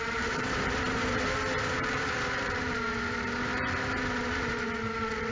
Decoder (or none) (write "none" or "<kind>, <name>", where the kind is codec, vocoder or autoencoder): vocoder, BigVGAN v2